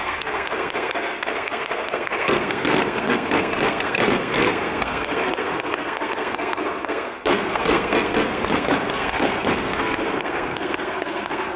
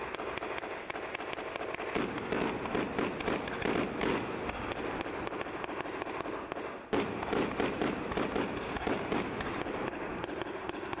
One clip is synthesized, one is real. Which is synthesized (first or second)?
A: first